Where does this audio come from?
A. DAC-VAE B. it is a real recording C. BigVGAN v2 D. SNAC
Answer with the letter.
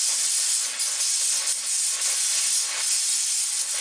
B